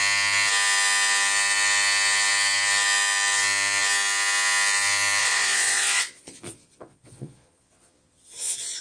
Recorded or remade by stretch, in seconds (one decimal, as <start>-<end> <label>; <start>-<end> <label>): 0.0-5.2 recorded; 5.2-8.8 remade

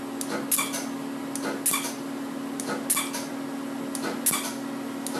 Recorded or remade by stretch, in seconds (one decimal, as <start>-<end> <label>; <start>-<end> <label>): 0.0-5.2 recorded

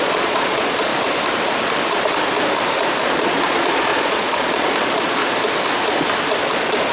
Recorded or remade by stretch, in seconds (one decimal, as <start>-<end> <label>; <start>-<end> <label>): 0.0-0.9 remade; 0.9-3.0 recorded; 3.0-5.2 remade; 5.2-6.4 recorded; 6.4-6.9 remade

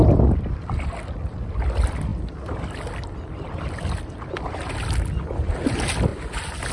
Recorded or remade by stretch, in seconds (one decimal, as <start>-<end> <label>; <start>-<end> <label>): 0.0-6.7 recorded

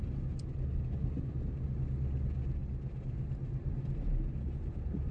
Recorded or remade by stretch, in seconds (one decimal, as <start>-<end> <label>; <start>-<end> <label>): 0.0-5.1 recorded

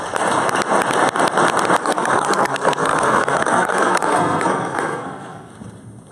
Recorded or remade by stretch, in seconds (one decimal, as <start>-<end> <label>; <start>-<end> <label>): 0.0-1.8 recorded; 1.8-5.5 remade; 5.5-6.1 recorded